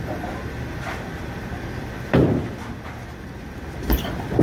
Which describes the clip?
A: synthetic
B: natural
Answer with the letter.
B